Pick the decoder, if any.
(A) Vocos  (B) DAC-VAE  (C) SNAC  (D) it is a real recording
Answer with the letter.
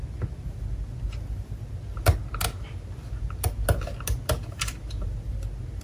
D